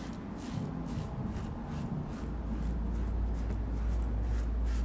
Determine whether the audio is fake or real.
real